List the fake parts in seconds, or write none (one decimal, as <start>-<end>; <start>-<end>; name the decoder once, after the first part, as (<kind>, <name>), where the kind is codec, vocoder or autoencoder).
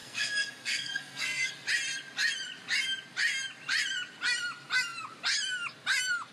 0.0-1.5 (codec, SNAC)